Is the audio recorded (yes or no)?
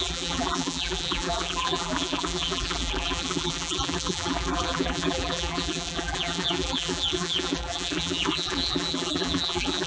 no